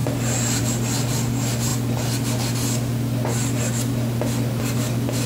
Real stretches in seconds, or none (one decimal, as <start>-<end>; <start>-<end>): 0.0-5.3